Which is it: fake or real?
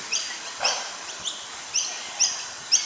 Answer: real